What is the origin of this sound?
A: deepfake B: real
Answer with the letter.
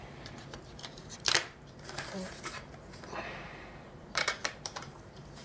A